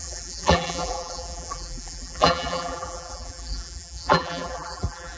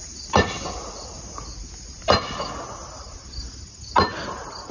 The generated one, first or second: first